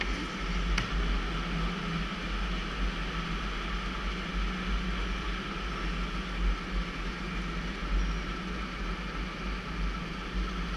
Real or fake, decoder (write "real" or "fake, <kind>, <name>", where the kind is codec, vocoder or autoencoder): real